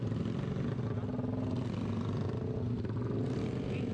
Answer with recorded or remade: recorded